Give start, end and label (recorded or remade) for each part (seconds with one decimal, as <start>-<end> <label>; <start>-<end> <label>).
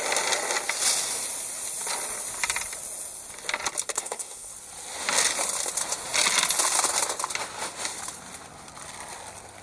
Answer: 0.0-3.9 recorded; 3.9-4.5 remade; 4.5-9.6 recorded